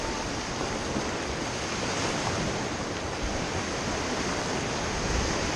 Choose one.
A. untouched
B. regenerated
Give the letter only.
A